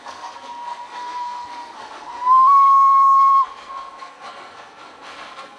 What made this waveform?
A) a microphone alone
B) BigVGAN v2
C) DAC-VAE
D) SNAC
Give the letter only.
D